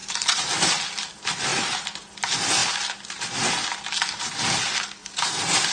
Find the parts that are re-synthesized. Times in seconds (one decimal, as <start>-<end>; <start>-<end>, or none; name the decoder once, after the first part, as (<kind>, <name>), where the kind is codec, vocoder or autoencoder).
0.0-0.7 (vocoder, BigVGAN v2); 1.5-2.1; 5.0-5.7